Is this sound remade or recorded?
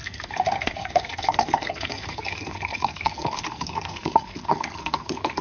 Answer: remade